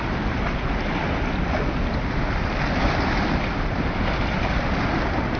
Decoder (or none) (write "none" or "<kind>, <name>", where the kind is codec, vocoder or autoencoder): none